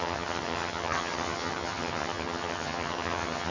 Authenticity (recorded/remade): remade